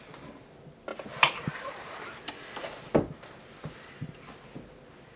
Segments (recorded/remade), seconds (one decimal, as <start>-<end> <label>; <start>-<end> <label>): 0.0-5.2 recorded